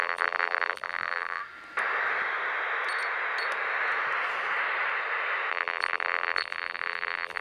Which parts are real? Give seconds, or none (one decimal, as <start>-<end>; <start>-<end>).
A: 1.4-5.5